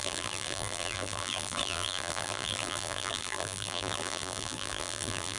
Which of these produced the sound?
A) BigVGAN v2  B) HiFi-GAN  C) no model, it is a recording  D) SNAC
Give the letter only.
A